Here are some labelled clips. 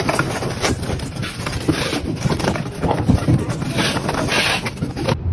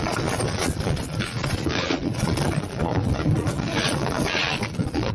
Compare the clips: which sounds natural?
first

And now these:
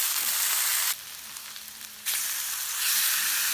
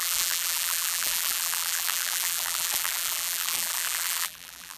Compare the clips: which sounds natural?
first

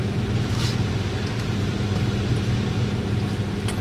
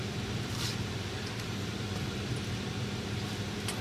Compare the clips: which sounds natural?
first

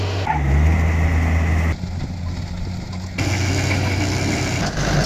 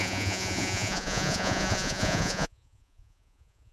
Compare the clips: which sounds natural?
first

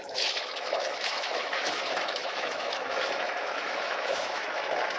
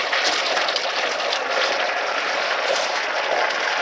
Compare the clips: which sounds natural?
second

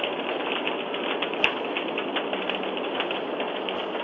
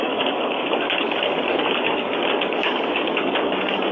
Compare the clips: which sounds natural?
first